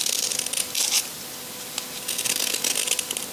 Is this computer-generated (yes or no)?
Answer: no